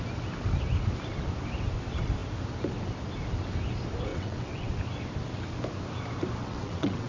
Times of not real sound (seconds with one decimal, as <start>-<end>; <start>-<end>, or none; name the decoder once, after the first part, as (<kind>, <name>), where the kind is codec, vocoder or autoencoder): 4.1-4.7 (vocoder, WaveNeXt); 6.4-7.1